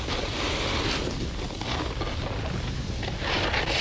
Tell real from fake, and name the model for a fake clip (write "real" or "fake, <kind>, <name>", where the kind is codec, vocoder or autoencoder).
real